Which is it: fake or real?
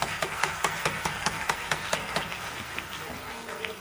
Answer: fake